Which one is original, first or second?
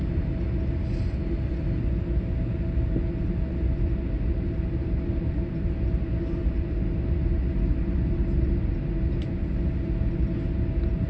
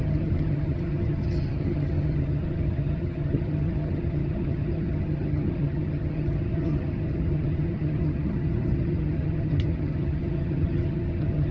first